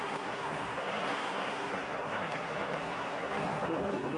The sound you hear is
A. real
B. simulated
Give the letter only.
B